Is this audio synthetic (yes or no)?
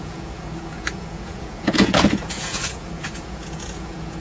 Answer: yes